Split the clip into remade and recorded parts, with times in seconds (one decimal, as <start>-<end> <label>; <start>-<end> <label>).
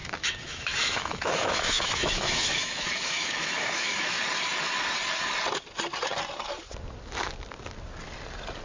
0.0-4.2 remade; 4.2-8.6 recorded